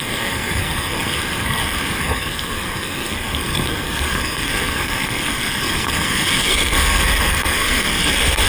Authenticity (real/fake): fake